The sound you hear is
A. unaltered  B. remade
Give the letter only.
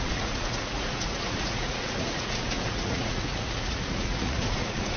B